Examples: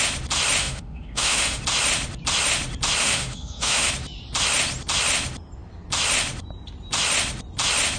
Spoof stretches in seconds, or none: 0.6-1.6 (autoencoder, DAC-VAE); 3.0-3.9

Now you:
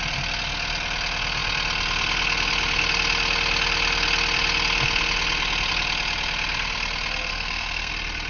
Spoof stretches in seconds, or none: 7.3-7.9 (codec, SNAC)